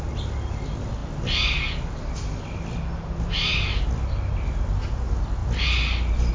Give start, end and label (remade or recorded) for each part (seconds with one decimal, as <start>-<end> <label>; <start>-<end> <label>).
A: 0.0-6.3 recorded